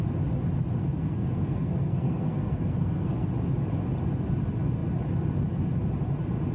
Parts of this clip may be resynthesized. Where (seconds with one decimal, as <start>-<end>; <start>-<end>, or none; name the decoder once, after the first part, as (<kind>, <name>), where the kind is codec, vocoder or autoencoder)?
0.8-3.3 (codec, SNAC)